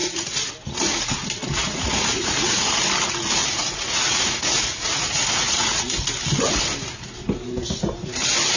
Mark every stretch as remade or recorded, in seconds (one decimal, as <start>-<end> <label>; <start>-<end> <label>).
0.0-0.5 remade; 0.5-1.6 recorded; 1.6-2.6 remade; 2.6-3.4 recorded; 3.4-5.8 remade; 5.8-8.6 recorded